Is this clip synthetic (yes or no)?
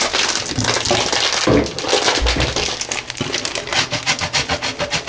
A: no